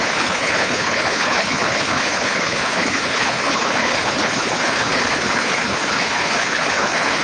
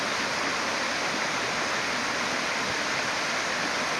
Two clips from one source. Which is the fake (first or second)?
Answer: first